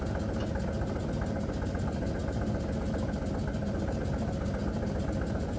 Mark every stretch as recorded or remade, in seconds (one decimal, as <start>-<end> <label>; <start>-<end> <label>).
0.0-5.6 recorded